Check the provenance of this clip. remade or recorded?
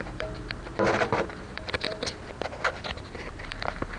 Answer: remade